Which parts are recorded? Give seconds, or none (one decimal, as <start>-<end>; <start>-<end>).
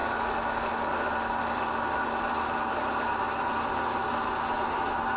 0.0-5.2